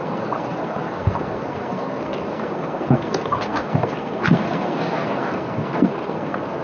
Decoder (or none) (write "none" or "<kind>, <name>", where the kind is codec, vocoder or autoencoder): codec, SNAC